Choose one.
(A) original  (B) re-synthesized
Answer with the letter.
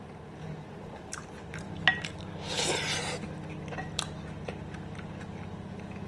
A